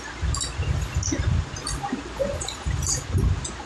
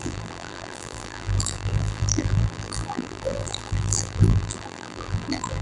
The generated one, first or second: second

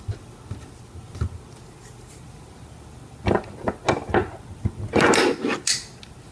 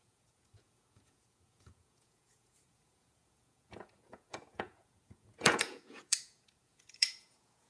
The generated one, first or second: second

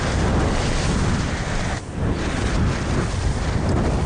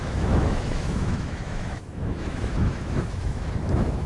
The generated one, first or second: second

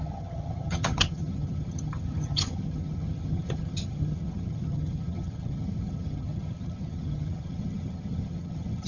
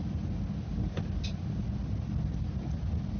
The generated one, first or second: first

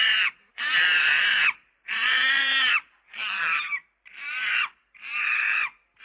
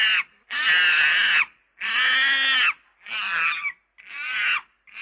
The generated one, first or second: first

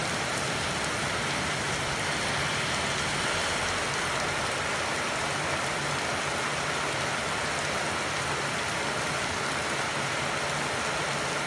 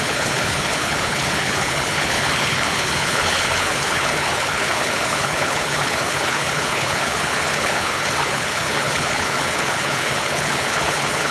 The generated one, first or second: second